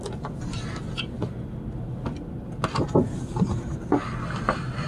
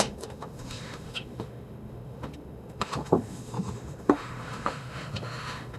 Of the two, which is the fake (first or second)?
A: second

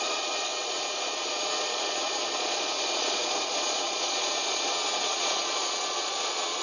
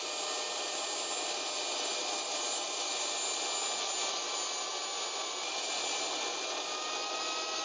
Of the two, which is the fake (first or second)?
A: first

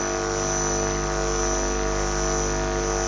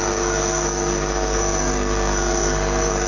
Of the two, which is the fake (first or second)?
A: second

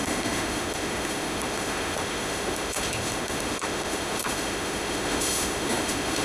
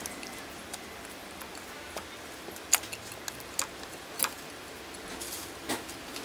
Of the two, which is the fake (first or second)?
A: first